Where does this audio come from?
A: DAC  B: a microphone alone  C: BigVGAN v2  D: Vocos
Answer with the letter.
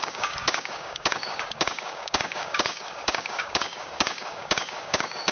A